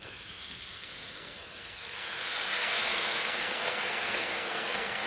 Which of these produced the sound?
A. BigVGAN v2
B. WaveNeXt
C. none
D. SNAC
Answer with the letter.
D